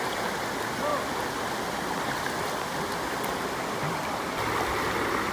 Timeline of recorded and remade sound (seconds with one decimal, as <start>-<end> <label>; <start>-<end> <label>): 0.0-5.3 recorded